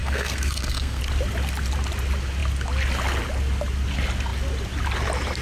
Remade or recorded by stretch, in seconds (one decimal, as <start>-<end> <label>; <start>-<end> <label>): 0.0-1.0 remade; 1.0-5.4 recorded